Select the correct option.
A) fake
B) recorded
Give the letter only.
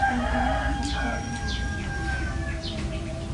B